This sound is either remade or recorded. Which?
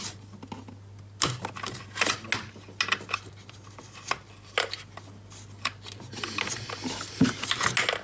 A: recorded